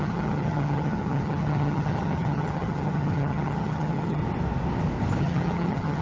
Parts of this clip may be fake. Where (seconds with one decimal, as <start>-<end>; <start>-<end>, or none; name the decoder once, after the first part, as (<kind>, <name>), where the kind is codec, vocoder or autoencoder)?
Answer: 0.0-4.2 (vocoder, HiFi-GAN); 5.2-6.0